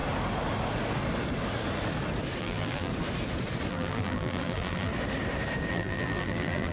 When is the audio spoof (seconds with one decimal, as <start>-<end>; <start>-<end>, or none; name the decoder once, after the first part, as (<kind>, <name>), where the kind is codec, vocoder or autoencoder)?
2.4-2.9 (vocoder, BigVGAN v2); 3.7-4.9; 5.7-6.7